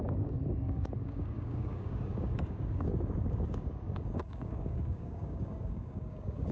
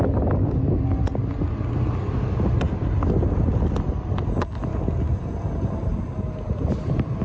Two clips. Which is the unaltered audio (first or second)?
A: second